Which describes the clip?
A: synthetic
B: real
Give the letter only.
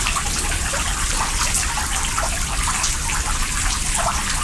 A